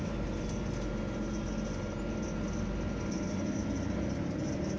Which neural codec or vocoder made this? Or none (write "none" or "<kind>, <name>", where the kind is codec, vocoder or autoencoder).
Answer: none